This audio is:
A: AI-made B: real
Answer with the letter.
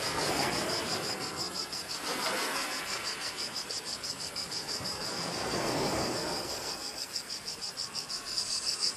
A